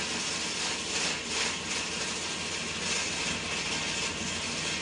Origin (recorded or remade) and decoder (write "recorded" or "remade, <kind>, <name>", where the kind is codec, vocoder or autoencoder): recorded